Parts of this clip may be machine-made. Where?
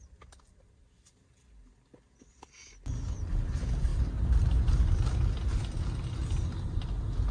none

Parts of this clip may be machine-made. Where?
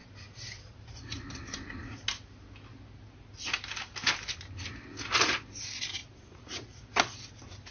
6.0-6.8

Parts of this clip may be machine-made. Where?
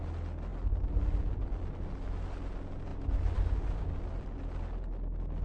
none